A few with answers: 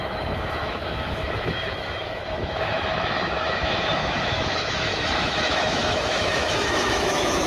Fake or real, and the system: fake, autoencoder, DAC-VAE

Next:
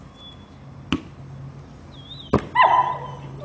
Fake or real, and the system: real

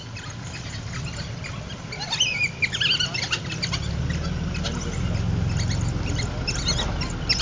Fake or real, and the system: real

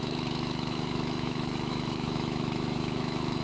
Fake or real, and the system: fake, autoencoder, DAC-VAE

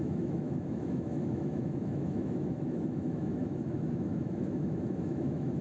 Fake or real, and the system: fake, autoencoder, DAC-VAE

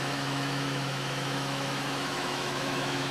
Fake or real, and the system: fake, autoencoder, DAC-VAE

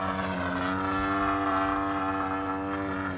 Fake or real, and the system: real